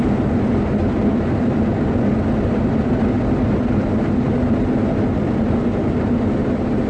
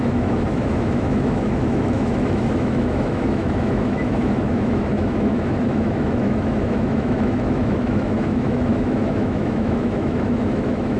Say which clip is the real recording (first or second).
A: first